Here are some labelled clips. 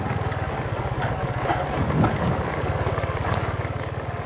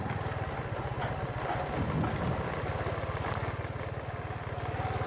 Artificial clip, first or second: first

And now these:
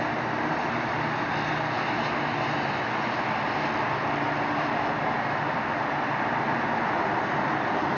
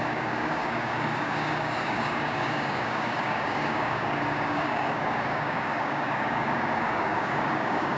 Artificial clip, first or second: second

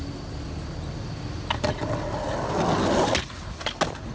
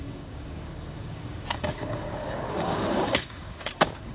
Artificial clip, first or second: second